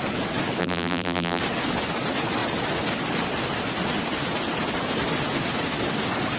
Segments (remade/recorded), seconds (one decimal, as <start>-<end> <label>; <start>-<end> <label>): 0.0-0.6 recorded; 0.6-1.4 remade; 1.4-6.4 recorded